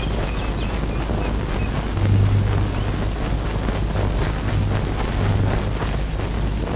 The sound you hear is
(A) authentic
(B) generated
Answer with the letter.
A